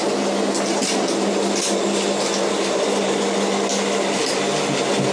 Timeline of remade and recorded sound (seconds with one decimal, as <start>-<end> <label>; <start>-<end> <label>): 0.0-5.1 recorded